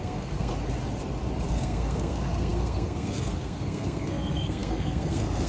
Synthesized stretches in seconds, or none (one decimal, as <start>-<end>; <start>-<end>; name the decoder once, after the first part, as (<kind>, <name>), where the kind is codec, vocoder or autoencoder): 0.0-0.5 (codec, SNAC); 1.5-5.5